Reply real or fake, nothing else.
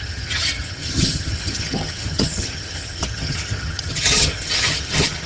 fake